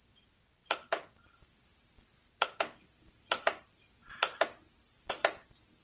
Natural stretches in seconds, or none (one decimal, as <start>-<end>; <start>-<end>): 0.0-5.8